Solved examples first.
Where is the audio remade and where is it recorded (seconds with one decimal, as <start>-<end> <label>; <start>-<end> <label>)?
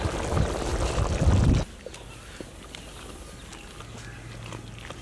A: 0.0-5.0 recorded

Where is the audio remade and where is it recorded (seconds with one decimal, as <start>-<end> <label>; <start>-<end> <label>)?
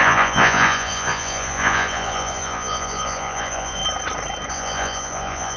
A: 0.0-3.8 remade; 3.8-4.5 recorded; 4.5-5.6 remade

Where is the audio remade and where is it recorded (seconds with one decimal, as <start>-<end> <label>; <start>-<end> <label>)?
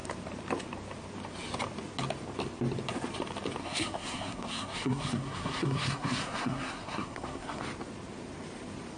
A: 0.0-3.6 recorded; 3.6-7.6 remade; 7.6-9.0 recorded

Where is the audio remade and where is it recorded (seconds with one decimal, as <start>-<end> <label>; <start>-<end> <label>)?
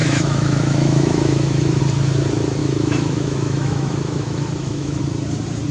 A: 0.0-1.8 remade; 1.8-2.6 recorded; 2.6-5.0 remade; 5.0-5.7 recorded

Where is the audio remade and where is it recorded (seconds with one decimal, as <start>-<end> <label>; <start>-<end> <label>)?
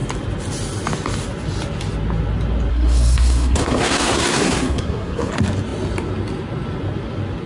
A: 0.0-2.7 recorded; 2.7-5.3 remade; 5.3-7.5 recorded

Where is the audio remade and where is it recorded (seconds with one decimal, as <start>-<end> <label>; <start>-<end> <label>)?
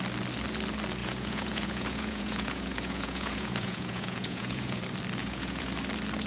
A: 0.0-1.0 recorded; 1.0-4.8 remade; 4.8-5.2 recorded; 5.2-5.7 remade; 5.7-6.3 recorded